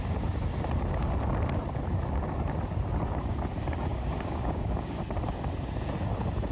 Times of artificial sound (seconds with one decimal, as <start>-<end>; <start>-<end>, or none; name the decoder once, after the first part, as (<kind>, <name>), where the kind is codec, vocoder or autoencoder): 3.9-5.0 (codec, DAC)